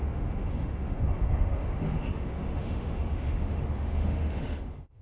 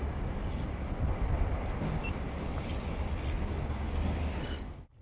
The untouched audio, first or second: second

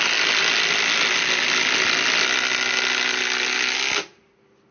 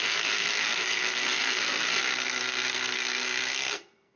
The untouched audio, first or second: first